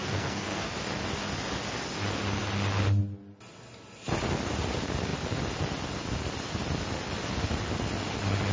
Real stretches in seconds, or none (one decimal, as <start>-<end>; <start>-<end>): 0.7-8.5